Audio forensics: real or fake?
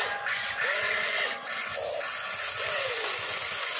fake